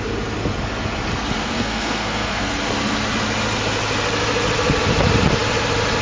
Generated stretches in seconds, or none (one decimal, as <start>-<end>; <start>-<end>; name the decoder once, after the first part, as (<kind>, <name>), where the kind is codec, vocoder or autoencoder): 1.4-2.5 (codec, SNAC)